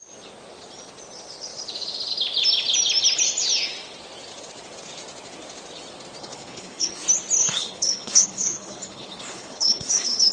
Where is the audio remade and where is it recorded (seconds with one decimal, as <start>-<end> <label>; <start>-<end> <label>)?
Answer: 0.0-6.2 recorded; 6.2-6.9 remade; 6.9-7.4 recorded; 7.4-10.3 remade